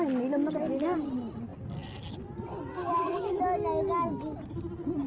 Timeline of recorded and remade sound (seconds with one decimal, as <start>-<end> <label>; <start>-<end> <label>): 0.0-2.8 recorded; 2.8-3.4 remade; 3.4-5.1 recorded